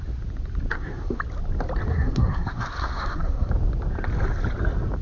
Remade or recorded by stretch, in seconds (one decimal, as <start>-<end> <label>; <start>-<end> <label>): 0.0-0.7 recorded; 0.7-1.2 remade; 1.2-1.9 recorded; 1.9-3.5 remade; 3.5-5.0 recorded